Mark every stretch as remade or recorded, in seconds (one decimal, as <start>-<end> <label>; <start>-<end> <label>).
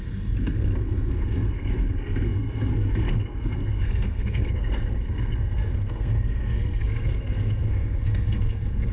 0.0-8.9 remade